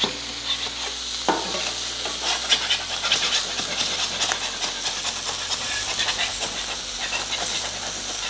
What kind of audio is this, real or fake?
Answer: real